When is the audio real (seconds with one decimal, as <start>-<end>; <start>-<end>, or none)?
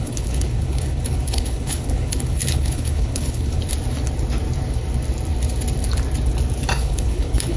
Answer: 3.6-6.7